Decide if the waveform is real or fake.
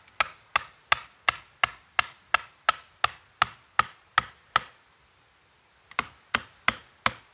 real